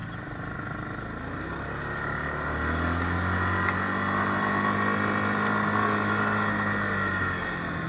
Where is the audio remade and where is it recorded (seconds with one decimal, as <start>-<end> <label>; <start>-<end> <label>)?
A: 0.0-7.9 recorded